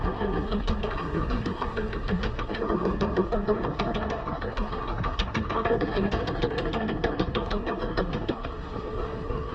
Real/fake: fake